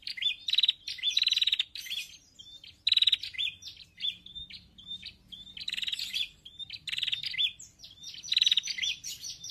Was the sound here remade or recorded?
remade